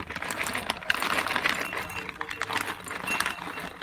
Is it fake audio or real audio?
real